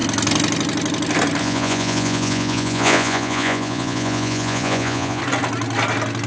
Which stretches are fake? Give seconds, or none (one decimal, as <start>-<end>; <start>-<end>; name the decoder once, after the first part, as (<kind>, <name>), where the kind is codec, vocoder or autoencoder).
1.4-5.2 (vocoder, Vocos)